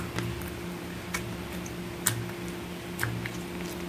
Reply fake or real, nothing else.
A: real